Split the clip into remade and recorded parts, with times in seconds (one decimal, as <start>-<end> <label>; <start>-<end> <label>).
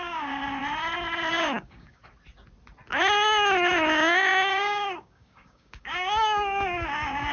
0.0-0.6 remade; 0.6-1.3 recorded; 1.3-2.0 remade; 2.0-3.7 recorded; 3.7-7.3 remade